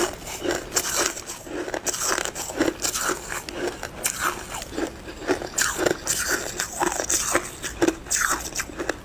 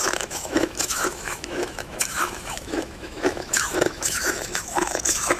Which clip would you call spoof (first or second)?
second